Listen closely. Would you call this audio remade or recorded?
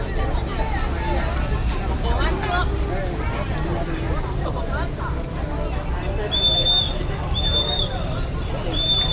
recorded